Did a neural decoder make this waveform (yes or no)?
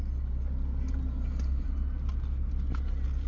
no